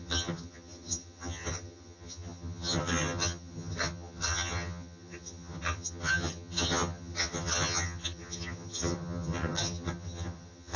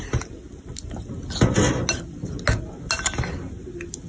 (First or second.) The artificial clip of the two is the first